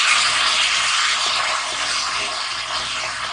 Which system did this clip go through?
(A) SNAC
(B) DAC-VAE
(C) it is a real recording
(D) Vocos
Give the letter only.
C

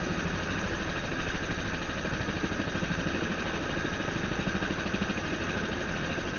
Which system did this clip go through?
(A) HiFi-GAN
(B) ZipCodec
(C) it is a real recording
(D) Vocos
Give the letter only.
C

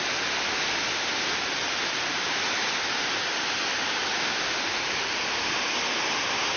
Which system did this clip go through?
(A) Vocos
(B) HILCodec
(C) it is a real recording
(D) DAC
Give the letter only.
C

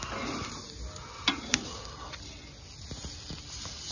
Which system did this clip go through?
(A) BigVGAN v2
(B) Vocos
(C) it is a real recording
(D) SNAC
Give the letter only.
C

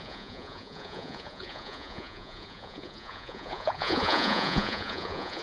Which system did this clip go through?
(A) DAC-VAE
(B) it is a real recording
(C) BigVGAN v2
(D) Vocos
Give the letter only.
D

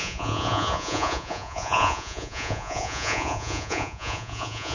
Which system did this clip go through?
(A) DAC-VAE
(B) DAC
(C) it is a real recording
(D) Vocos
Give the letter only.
D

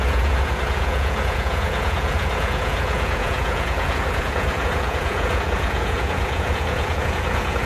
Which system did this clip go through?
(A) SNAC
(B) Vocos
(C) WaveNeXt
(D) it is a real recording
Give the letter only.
B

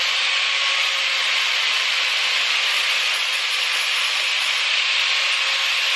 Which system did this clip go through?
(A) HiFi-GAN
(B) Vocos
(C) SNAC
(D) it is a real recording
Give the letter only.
D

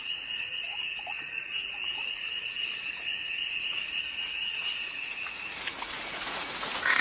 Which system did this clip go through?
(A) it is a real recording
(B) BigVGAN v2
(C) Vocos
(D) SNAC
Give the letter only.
C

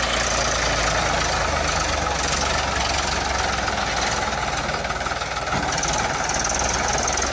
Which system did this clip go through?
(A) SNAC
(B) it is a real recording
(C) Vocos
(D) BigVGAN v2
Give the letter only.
B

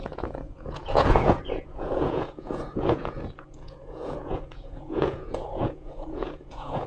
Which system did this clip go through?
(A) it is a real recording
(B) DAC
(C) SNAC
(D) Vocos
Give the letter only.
D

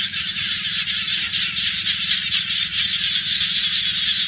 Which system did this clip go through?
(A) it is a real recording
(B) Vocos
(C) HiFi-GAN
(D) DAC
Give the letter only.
A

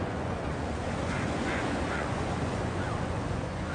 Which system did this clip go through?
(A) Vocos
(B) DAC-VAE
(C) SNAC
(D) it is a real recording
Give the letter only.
A